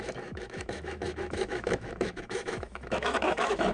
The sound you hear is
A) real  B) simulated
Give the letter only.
B